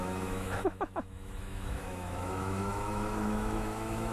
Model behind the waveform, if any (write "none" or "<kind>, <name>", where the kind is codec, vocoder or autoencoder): autoencoder, DAC-VAE